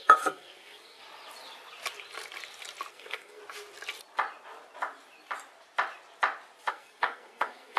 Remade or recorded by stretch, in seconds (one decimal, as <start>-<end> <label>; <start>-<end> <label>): 0.0-1.0 remade; 1.0-2.9 recorded; 2.9-3.4 remade; 3.4-6.7 recorded; 6.7-7.8 remade